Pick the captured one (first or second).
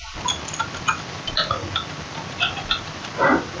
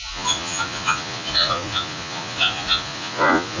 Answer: first